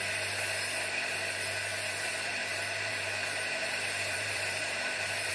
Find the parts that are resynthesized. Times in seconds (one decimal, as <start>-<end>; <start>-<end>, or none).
1.7-5.3